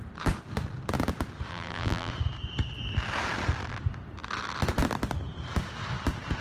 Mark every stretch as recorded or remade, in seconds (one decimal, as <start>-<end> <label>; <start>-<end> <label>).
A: 0.0-1.5 recorded; 1.5-2.1 remade; 2.1-6.4 recorded